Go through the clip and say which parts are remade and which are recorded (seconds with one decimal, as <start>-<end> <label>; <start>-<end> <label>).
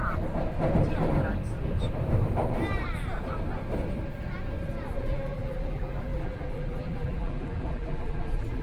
0.0-5.0 recorded; 5.0-8.6 remade